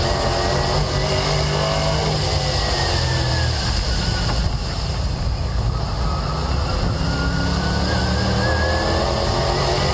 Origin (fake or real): real